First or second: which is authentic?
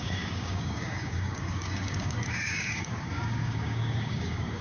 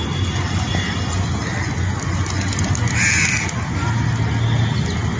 second